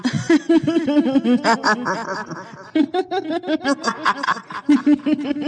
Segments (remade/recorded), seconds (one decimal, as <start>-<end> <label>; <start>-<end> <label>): 0.0-5.5 recorded